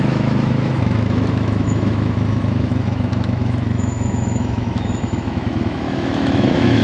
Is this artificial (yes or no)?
yes